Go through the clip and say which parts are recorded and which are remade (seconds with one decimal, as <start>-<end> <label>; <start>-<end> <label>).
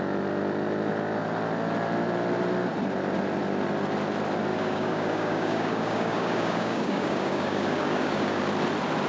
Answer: 0.0-4.5 recorded; 4.5-8.4 remade; 8.4-9.1 recorded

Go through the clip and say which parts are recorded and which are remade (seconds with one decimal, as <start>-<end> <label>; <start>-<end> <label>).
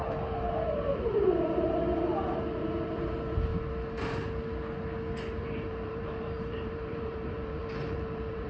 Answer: 0.0-3.5 remade; 3.5-5.4 recorded; 5.4-8.5 remade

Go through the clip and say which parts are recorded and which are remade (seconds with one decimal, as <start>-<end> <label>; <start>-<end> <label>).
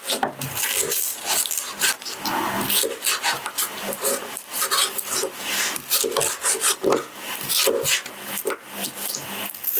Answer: 0.0-9.8 recorded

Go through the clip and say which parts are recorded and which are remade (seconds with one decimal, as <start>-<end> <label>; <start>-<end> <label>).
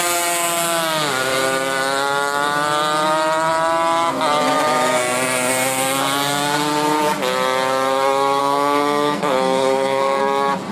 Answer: 0.0-8.4 recorded; 8.4-10.2 remade; 10.2-10.7 recorded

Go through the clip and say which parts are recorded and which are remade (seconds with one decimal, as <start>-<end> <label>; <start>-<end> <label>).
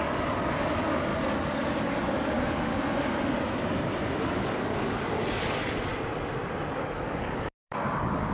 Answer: 0.0-1.1 remade; 1.1-1.8 recorded; 1.8-2.7 remade; 2.7-4.2 recorded; 4.2-5.9 remade; 5.9-6.7 recorded; 6.7-8.3 remade